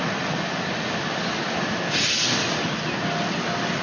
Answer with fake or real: real